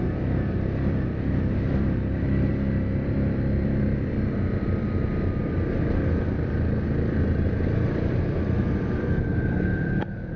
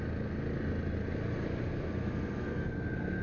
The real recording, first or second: second